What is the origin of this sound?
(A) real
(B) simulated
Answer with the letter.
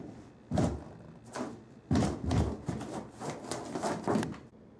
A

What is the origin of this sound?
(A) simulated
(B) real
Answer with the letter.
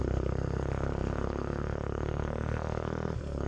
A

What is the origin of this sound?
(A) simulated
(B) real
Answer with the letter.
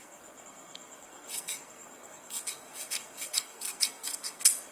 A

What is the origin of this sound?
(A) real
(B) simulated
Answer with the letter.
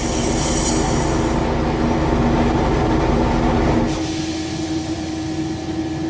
A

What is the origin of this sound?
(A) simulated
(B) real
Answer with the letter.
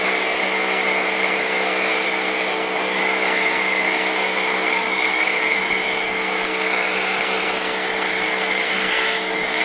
A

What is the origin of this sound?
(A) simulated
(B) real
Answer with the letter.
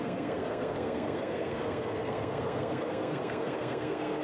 A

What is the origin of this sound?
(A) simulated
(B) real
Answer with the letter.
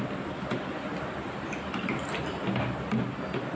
B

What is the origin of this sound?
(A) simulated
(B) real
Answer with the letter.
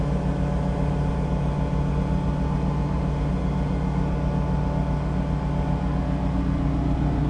B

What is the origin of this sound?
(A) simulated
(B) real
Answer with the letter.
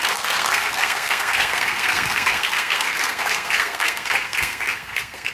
A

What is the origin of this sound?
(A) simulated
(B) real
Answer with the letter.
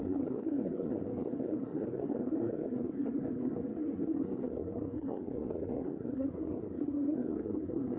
A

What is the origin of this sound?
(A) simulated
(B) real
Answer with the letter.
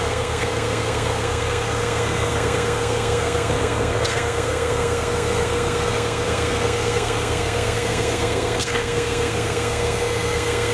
A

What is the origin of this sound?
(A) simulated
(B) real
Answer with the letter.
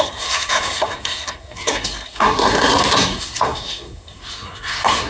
A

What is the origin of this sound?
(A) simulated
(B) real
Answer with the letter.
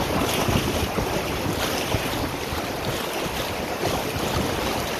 B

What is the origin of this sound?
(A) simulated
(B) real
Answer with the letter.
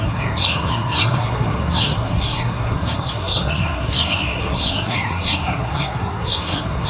A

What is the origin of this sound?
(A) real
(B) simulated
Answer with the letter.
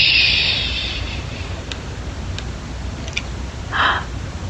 A